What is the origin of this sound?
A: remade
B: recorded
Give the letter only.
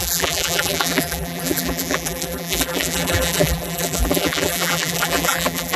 A